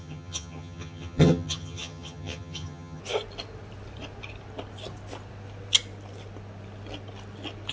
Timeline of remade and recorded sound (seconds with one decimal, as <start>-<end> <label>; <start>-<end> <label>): 0.0-3.0 remade; 3.0-7.7 recorded